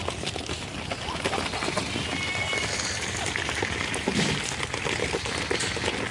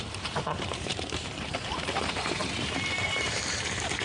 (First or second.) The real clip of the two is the first